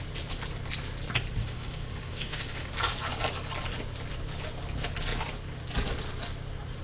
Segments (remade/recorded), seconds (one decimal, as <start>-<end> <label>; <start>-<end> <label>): 0.0-1.4 recorded; 1.4-2.7 remade; 2.7-6.8 recorded